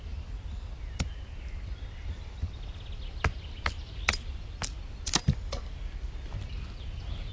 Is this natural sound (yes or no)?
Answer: yes